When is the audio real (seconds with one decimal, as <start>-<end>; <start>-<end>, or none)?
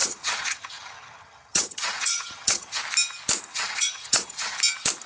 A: 2.8-3.5; 4.6-5.1